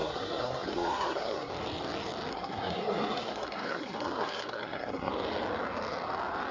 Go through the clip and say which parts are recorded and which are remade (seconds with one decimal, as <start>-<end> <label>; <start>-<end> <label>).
0.0-1.5 remade; 1.5-2.3 recorded; 2.3-5.1 remade; 5.1-6.5 recorded